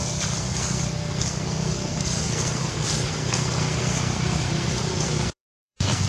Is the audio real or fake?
fake